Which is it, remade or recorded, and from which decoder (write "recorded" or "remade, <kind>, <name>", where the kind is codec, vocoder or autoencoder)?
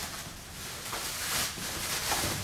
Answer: recorded